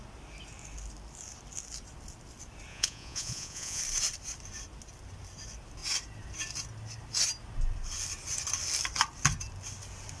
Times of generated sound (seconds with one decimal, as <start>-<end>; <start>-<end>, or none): 2.7-3.8